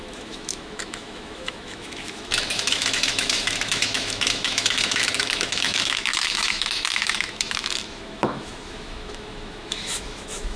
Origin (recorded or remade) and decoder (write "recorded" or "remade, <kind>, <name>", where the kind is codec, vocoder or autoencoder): remade, autoencoder, DAC-VAE